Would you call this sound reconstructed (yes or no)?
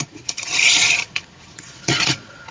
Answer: yes